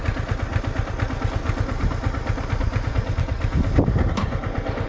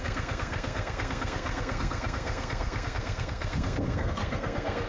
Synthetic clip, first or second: second